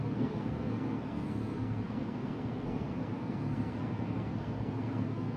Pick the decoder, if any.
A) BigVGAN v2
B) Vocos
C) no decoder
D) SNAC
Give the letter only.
D